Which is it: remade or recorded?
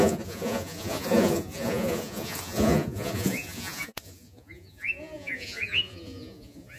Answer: remade